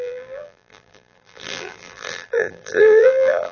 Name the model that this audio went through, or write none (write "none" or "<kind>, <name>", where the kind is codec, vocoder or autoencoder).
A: vocoder, BigVGAN v2